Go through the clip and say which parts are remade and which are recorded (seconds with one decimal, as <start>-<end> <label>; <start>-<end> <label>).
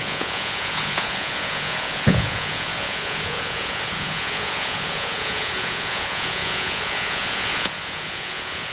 0.0-8.7 remade